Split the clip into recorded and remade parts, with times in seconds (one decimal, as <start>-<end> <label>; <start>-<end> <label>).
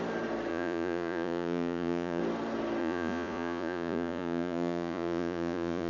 0.0-0.5 recorded; 0.5-2.2 remade; 2.2-2.8 recorded; 2.8-5.9 remade